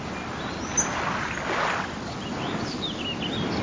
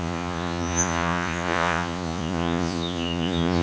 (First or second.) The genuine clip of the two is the first